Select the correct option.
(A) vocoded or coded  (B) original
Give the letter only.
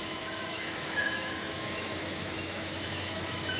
A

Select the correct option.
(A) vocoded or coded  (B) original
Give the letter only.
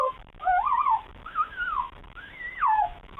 A